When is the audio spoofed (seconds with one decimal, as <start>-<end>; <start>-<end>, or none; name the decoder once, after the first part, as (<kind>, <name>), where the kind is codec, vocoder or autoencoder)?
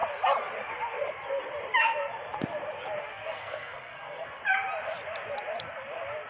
3.0-4.4 (codec, SNAC)